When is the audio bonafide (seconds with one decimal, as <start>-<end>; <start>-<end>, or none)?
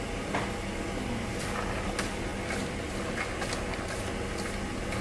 0.0-5.0